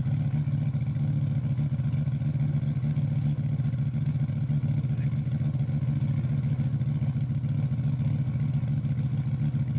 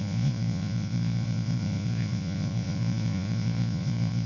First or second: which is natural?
first